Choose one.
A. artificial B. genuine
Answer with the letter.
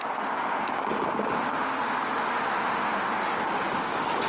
B